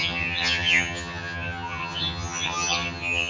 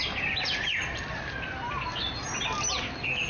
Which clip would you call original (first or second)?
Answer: second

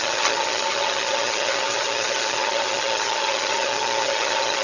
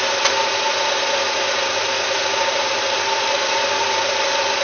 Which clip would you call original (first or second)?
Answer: second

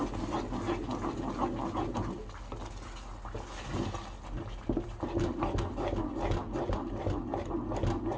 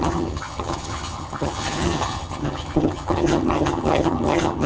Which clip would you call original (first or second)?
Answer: first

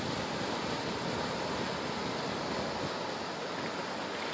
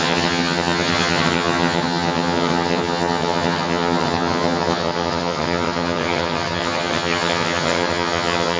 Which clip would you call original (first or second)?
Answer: first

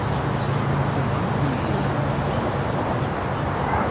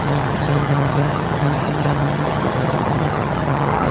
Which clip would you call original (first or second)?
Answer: first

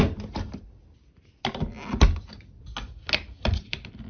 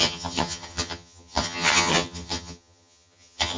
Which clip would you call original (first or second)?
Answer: first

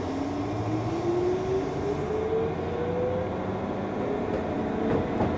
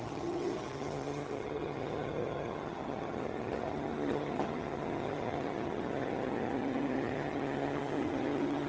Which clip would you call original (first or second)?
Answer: first